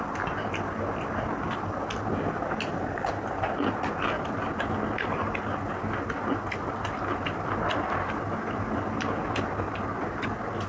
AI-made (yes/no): no